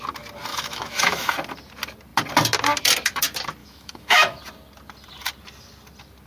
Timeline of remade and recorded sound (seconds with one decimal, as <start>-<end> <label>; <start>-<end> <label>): 0.0-0.5 recorded; 0.5-1.3 remade; 1.3-3.6 recorded; 3.6-4.4 remade; 4.4-6.3 recorded